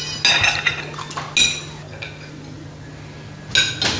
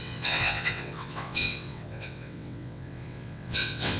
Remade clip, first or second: second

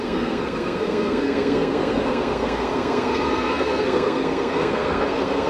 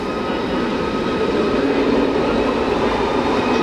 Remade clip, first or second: first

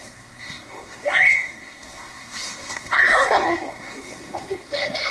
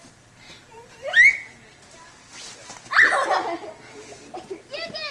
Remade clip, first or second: first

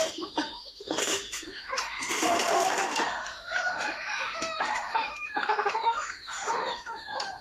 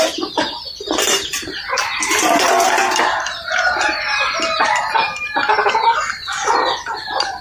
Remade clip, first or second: first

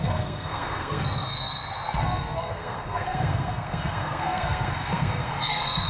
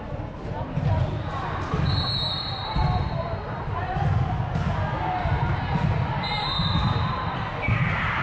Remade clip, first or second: first